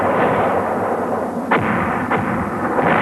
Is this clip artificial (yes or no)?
no